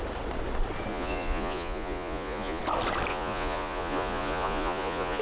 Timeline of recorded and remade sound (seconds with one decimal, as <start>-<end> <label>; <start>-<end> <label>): 0.0-0.9 recorded; 0.9-2.6 remade; 2.6-3.1 recorded; 3.1-5.2 remade